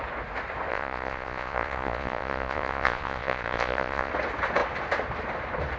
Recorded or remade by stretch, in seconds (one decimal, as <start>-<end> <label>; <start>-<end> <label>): 0.0-0.7 recorded; 0.7-4.1 remade; 4.1-5.8 recorded